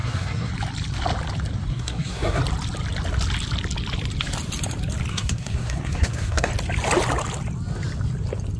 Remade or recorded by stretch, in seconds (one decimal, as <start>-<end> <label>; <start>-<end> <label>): 0.0-0.5 remade; 0.5-1.7 recorded; 1.7-2.4 remade; 2.4-5.1 recorded; 5.1-6.5 remade; 6.5-8.6 recorded